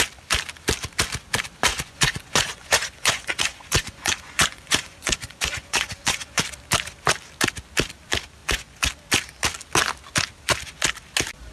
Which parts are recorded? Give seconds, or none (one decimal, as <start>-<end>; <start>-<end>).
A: 0.0-1.7; 6.4-8.4; 8.9-11.5